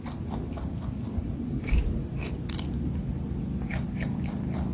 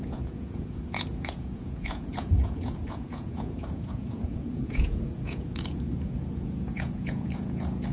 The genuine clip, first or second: first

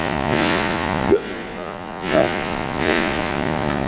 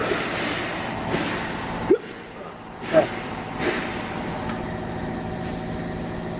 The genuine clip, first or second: second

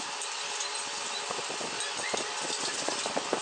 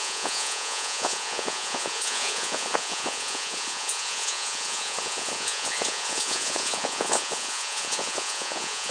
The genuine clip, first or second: first